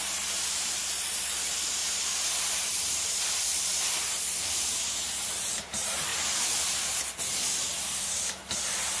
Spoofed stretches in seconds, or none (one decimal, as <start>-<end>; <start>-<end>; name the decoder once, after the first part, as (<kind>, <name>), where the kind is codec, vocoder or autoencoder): 0.0-9.0 (vocoder, BigVGAN v2)